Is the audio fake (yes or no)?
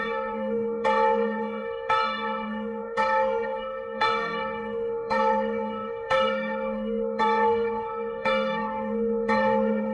yes